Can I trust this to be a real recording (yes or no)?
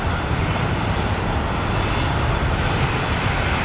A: yes